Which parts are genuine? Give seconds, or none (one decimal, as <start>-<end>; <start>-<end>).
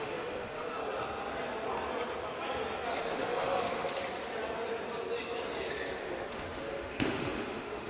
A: 0.8-3.0; 4.0-6.0